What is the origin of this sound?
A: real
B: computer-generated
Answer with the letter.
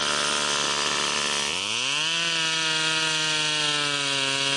A